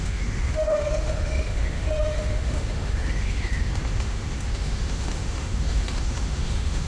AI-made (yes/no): yes